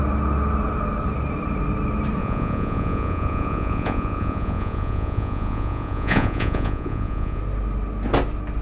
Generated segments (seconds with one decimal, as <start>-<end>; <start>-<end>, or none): 2.2-7.4